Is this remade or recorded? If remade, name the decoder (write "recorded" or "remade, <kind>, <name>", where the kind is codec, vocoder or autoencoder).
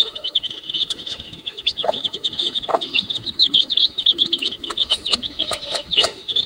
remade, autoencoder, DAC-VAE